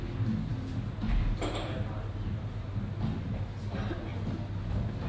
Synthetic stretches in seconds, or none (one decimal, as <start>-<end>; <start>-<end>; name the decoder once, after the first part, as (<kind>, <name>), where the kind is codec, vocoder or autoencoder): none

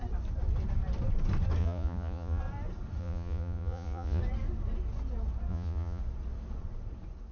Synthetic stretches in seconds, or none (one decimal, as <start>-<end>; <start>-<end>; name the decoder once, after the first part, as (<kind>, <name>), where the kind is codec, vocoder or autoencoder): 1.6-2.4 (vocoder, Vocos); 3.0-4.2; 5.5-6.0

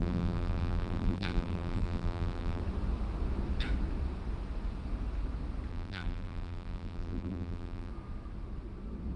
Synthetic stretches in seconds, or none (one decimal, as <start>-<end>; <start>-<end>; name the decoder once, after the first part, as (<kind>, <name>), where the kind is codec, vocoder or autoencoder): 0.0-2.6 (vocoder, BigVGAN v2); 5.7-7.9

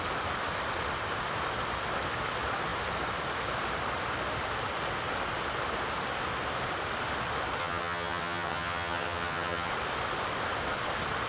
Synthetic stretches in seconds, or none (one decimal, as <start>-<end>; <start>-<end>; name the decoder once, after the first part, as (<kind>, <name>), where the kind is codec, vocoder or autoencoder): 7.6-9.7 (vocoder, HiFi-GAN)

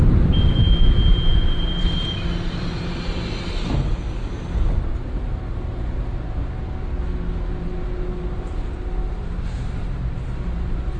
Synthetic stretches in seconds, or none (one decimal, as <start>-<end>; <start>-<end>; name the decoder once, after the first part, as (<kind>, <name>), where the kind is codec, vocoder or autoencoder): none

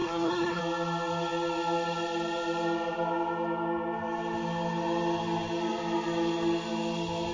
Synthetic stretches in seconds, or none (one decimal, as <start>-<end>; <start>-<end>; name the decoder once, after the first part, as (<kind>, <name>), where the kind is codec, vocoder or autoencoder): 0.0-0.6 (codec, SNAC)

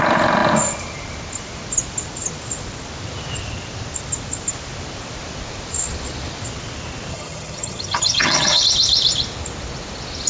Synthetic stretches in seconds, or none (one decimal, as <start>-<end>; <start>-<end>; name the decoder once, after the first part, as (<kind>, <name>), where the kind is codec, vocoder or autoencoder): 7.1-8.6 (vocoder, HiFi-GAN)